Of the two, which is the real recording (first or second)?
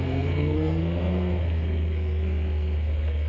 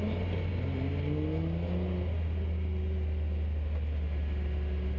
second